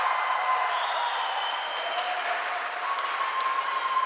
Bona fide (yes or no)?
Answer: yes